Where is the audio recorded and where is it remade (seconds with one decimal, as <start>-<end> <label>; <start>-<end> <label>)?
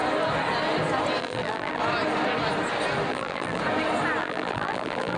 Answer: 0.0-1.2 recorded; 1.2-1.8 remade; 1.8-3.1 recorded; 3.1-3.6 remade; 3.6-4.2 recorded; 4.2-5.2 remade